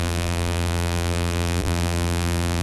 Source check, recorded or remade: remade